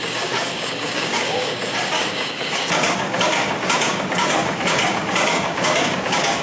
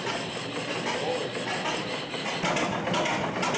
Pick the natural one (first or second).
second